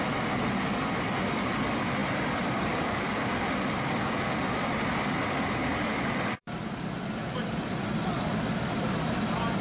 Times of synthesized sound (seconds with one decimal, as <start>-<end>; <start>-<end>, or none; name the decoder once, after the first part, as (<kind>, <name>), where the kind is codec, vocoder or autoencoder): 2.0-2.9 (vocoder, BigVGAN v2); 5.7-8.3